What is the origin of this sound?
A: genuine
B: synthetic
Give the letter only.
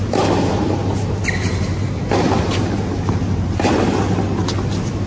A